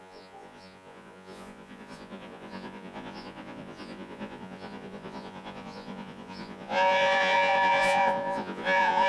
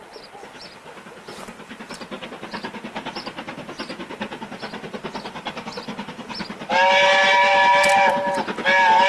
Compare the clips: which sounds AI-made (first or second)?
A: first